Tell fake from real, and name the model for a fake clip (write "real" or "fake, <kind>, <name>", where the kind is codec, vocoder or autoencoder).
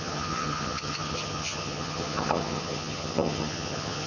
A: fake, vocoder, HiFi-GAN